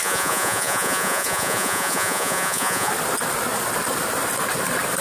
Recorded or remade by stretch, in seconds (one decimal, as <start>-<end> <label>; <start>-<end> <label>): 0.0-2.9 remade; 2.9-5.0 recorded